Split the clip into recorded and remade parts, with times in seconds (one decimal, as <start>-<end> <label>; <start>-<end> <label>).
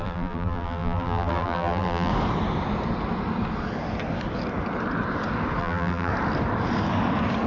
0.0-2.1 remade; 2.1-5.6 recorded; 5.6-6.1 remade; 6.1-7.5 recorded